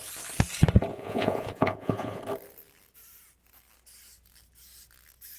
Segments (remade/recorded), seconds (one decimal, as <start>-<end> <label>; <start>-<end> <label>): 0.0-0.9 recorded; 0.9-2.2 remade; 2.2-5.4 recorded